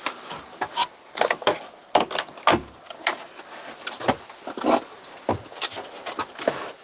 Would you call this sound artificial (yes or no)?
no